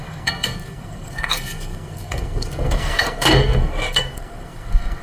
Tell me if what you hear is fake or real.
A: fake